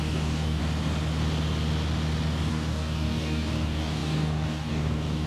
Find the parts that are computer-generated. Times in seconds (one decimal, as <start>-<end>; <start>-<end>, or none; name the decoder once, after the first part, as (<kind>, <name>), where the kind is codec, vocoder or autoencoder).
0.0-0.6 (codec, DAC); 2.5-5.3